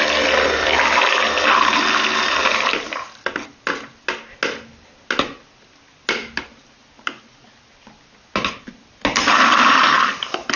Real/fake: real